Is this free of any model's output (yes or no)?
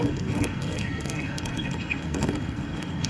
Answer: no